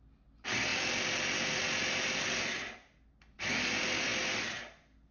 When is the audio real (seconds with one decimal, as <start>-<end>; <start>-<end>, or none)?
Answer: 0.0-5.1

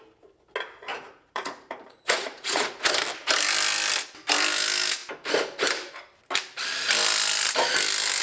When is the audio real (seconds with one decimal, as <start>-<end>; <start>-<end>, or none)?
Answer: 0.0-0.9; 2.9-8.2

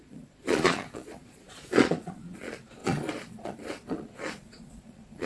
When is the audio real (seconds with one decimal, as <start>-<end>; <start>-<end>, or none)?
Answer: none